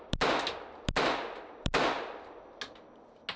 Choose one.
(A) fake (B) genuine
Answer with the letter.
B